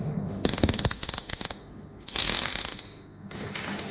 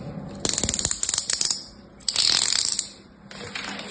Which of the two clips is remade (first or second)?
first